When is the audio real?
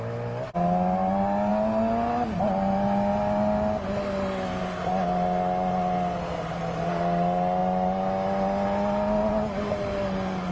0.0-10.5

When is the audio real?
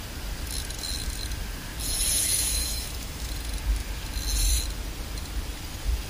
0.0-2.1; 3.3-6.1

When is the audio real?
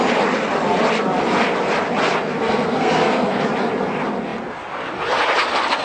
0.0-2.3; 3.4-5.8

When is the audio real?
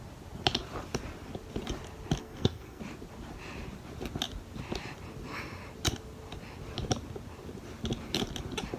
0.0-2.2; 2.8-8.8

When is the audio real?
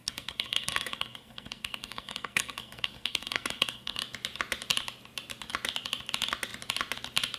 4.0-7.4